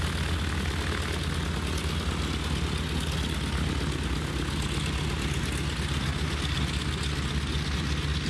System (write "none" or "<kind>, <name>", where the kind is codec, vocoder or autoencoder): none